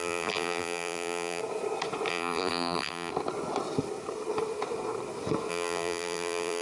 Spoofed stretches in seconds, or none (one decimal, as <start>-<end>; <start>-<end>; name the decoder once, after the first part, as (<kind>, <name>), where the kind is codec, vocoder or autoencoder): 0.0-1.4 (vocoder, BigVGAN v2); 2.1-3.1; 5.5-6.6